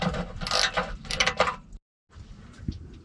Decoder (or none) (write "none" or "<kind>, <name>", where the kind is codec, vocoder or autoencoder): none